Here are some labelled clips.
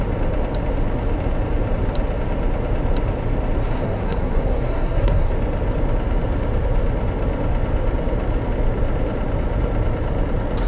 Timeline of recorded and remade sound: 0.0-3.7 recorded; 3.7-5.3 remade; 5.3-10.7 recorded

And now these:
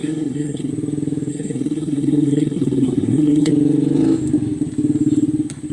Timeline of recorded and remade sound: 0.0-0.7 remade; 0.7-1.3 recorded; 1.3-3.5 remade; 3.5-5.7 recorded

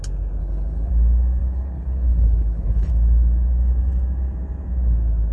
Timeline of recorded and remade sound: 0.0-0.4 recorded; 0.4-0.9 remade; 0.9-1.4 recorded; 1.4-2.9 remade; 2.9-5.3 recorded

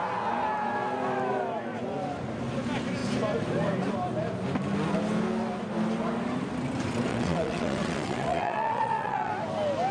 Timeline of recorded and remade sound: 0.0-7.1 recorded; 7.1-9.3 remade; 9.3-9.9 recorded

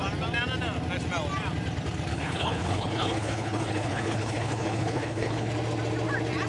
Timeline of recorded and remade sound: 0.0-2.1 recorded; 2.1-5.5 remade; 5.5-6.5 recorded

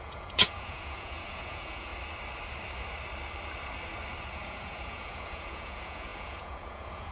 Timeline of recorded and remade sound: 0.0-1.9 remade; 1.9-4.2 recorded; 4.2-7.1 remade